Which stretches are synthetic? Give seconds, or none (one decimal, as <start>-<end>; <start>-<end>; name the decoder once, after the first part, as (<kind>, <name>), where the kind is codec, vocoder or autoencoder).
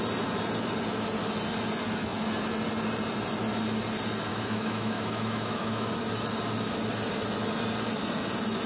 4.3-5.9 (autoencoder, DAC-VAE)